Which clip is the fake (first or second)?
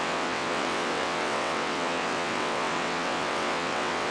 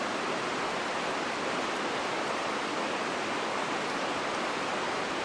first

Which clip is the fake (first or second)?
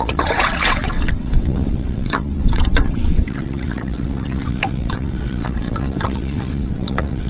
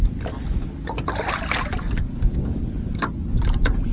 first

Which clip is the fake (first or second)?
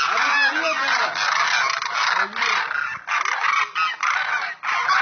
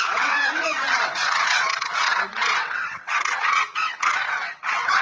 second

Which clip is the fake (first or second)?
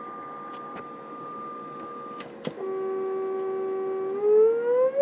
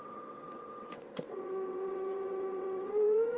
second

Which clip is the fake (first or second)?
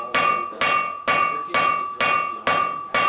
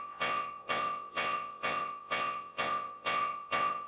second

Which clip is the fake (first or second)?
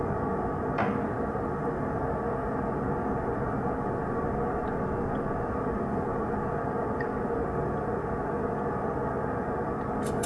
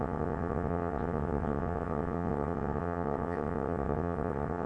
second